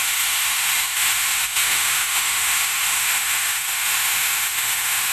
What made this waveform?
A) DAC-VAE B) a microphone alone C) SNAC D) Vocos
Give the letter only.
A